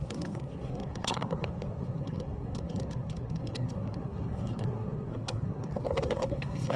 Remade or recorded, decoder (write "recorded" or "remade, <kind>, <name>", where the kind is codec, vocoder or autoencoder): remade, codec, SNAC